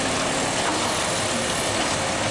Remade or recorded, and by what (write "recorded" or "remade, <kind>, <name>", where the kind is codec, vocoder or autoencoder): recorded